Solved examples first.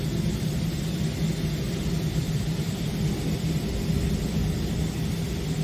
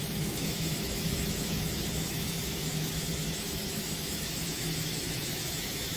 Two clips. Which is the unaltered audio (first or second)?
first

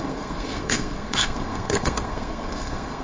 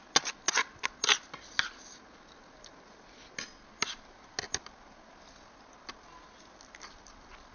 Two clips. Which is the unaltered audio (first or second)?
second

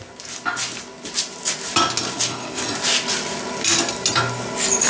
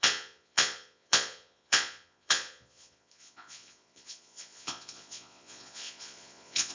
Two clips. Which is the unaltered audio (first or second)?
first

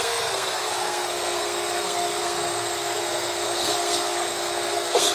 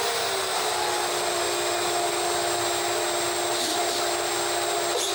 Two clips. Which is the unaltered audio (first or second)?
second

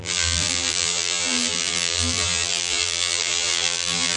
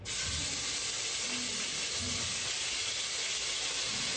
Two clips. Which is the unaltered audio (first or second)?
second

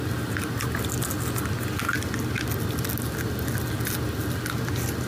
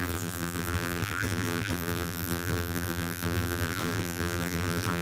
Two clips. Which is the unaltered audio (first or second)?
first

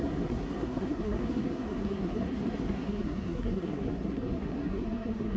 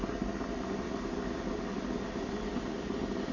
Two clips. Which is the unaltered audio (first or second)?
second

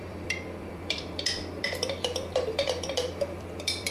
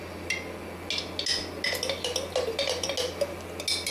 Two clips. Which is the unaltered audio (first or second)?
second